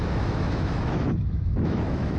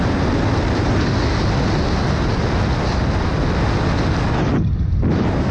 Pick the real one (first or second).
second